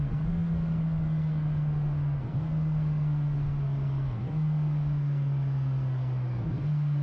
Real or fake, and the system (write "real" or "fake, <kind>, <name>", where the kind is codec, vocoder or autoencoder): fake, codec, SNAC